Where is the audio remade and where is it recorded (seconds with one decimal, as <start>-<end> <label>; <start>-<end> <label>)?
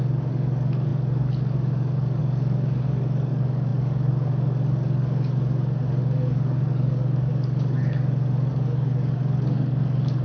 0.0-10.2 remade